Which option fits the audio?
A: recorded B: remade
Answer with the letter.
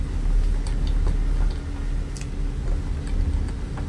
A